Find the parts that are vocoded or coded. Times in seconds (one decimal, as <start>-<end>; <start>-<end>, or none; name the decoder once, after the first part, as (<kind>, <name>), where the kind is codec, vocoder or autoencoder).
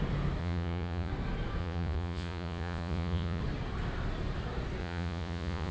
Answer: 0.4-1.1 (vocoder, Vocos); 1.6-3.4; 4.8-5.7